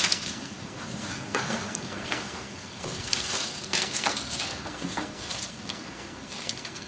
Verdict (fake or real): fake